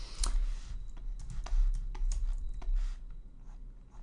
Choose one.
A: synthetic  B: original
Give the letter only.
B